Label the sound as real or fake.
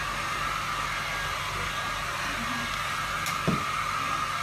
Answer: real